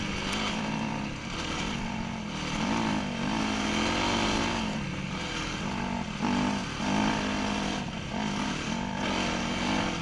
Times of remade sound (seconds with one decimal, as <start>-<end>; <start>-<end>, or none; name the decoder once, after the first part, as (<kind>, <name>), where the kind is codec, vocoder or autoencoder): none